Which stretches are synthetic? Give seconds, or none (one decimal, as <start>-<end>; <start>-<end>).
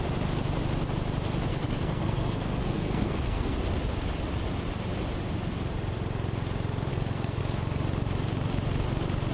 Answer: 1.5-3.6; 6.9-7.4